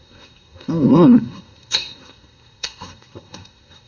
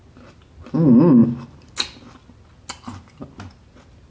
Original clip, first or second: second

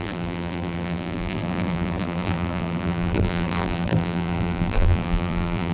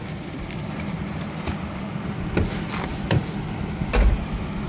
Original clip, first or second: second